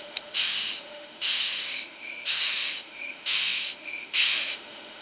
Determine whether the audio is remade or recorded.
remade